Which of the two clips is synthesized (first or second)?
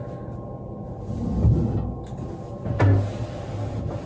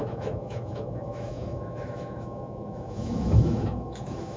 second